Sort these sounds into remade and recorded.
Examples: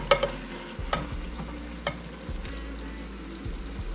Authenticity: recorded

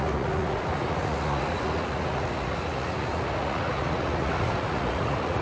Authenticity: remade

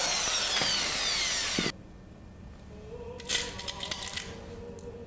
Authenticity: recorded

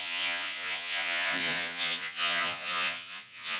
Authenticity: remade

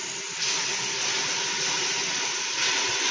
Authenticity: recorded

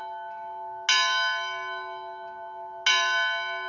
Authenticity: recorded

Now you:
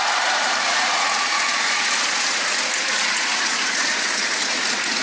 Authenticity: remade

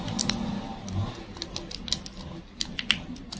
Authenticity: recorded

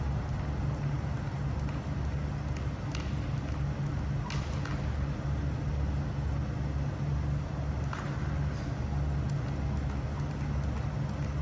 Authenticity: recorded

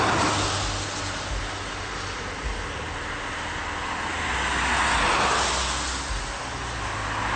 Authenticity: recorded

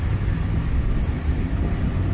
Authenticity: recorded